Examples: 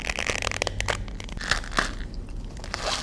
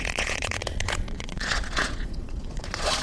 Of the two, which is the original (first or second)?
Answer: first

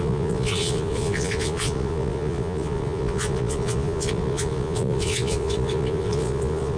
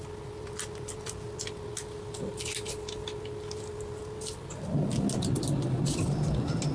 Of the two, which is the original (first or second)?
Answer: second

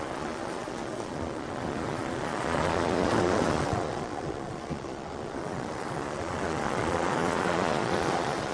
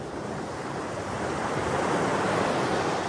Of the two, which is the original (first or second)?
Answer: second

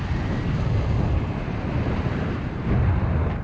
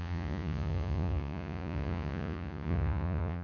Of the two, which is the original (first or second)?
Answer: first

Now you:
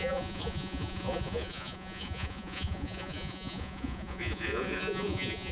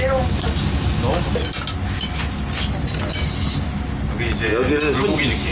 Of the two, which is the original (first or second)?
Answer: second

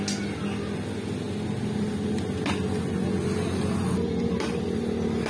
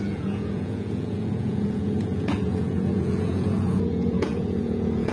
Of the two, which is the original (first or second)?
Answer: first